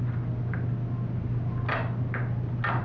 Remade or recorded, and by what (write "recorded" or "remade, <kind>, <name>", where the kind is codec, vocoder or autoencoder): recorded